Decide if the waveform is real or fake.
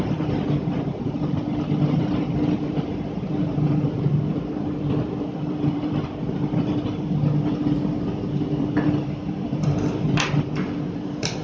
fake